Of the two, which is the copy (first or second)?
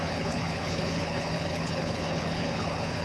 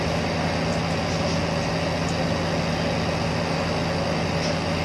first